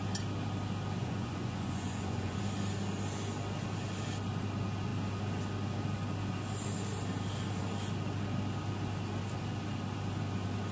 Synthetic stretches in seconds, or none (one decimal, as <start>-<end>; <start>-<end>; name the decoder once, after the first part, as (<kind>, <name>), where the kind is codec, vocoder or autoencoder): 1.0-2.4 (vocoder, Vocos)